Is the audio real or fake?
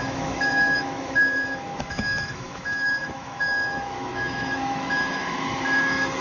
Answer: fake